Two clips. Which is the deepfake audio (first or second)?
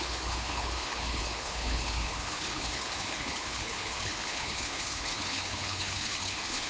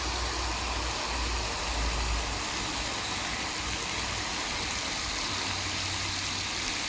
first